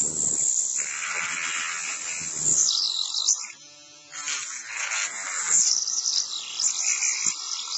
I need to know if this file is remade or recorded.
remade